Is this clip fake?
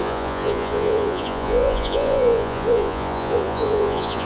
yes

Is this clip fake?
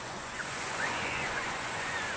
yes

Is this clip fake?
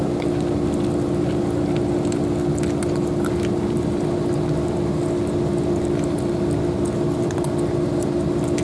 no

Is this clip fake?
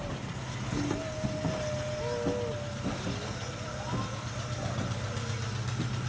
no